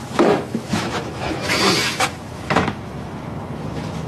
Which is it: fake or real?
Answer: fake